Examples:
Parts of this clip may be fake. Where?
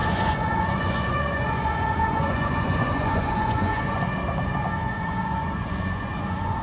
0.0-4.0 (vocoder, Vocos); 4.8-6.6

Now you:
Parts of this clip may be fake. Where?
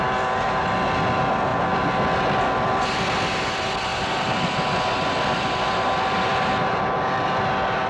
3.9-6.8 (vocoder, BigVGAN v2)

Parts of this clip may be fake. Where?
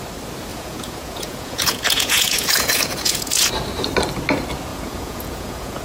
0.5-3.5 (vocoder, Vocos); 4.7-5.8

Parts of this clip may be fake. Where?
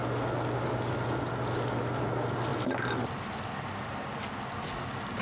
none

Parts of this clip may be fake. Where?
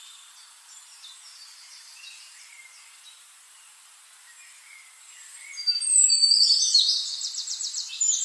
0.0-8.2 (vocoder, BigVGAN v2)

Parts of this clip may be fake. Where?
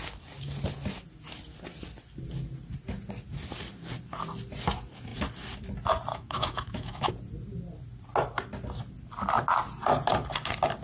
6.1-7.1 (autoencoder, DAC-VAE)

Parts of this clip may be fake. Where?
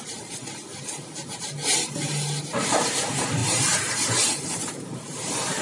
0.0-1.6 (vocoder, BigVGAN v2); 2.4-5.6